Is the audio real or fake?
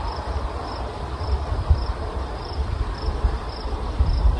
fake